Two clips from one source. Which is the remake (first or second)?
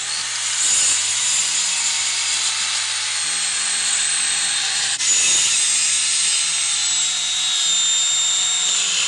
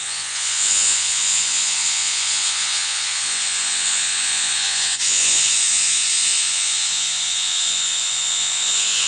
second